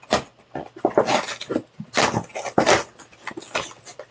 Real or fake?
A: real